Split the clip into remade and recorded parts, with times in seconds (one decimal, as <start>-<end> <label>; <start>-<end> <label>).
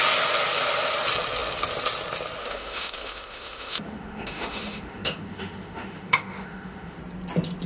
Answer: 0.0-2.4 recorded; 2.4-7.0 remade; 7.0-7.7 recorded